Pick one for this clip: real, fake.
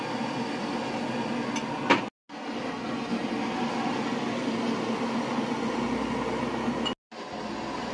real